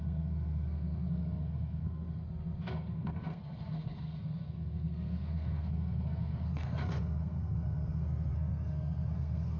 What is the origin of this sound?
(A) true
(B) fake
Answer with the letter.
B